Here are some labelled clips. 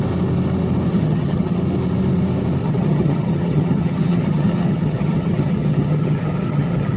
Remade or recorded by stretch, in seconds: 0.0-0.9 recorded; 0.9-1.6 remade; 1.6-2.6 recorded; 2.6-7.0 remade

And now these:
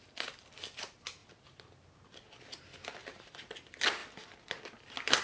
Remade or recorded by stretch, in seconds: 0.0-3.0 recorded; 3.0-3.5 remade; 3.5-5.2 recorded

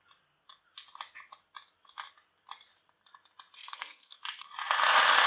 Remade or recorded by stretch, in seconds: 0.0-3.6 recorded; 3.6-4.2 remade; 4.2-5.3 recorded

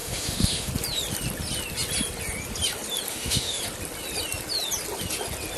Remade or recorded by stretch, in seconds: 0.0-0.7 remade; 0.7-3.1 recorded; 3.1-3.6 remade; 3.6-5.6 recorded

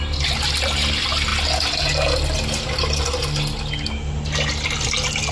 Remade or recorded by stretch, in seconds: 0.0-5.3 recorded

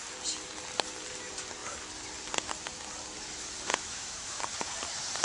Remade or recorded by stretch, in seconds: 0.0-3.7 recorded; 3.7-4.4 remade; 4.4-5.2 recorded

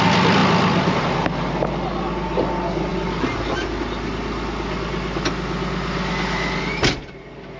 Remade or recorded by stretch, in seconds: 0.0-7.6 recorded